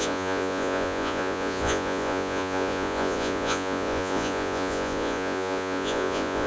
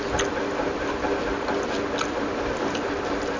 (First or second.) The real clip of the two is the second